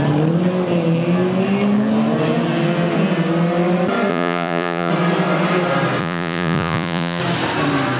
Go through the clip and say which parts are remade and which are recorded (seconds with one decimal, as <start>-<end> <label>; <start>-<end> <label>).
0.0-4.1 recorded; 4.1-4.9 remade; 4.9-6.0 recorded; 6.0-7.2 remade; 7.2-8.0 recorded